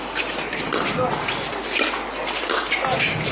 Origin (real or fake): fake